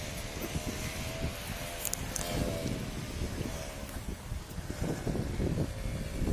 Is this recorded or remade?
recorded